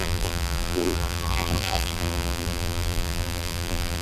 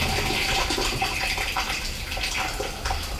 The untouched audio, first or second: second